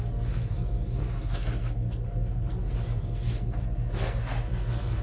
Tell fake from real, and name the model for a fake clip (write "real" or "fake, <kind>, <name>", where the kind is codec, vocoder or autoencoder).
fake, codec, SNAC